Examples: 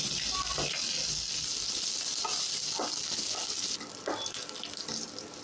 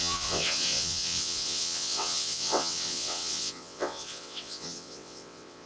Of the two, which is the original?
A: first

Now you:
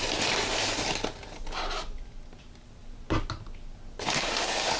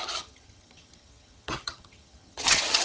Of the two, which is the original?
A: first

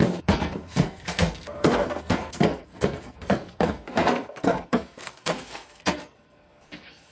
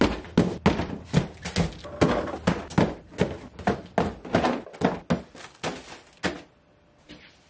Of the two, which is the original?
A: second